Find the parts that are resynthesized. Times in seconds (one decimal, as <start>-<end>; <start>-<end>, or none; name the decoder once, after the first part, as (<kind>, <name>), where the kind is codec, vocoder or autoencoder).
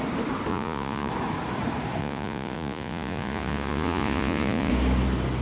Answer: 0.5-1.1 (vocoder, Vocos); 2.0-4.7